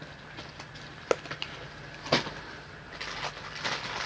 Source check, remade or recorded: recorded